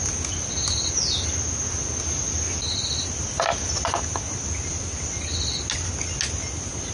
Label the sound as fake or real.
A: real